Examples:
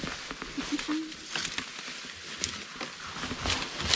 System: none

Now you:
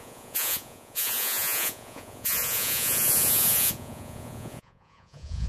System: vocoder, Vocos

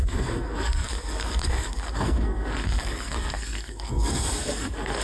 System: codec, SNAC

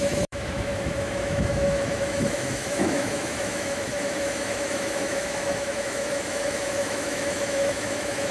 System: autoencoder, DAC-VAE